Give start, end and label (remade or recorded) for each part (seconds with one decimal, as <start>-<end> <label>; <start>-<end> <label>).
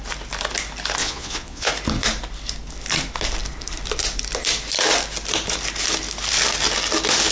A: 0.0-1.0 recorded; 1.0-1.7 remade; 1.7-7.3 recorded